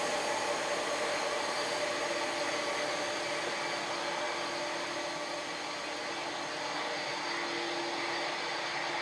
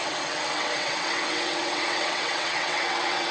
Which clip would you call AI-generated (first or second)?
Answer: second